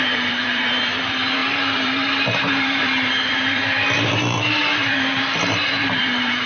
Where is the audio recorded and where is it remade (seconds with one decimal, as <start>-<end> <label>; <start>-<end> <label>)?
0.0-6.5 remade